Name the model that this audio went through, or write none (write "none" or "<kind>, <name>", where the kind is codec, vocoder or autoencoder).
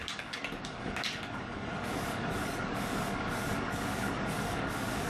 codec, DAC